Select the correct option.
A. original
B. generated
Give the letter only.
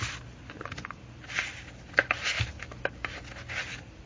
A